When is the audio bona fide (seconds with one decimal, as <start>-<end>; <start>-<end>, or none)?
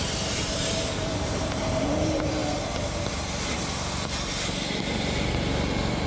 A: 2.4-6.1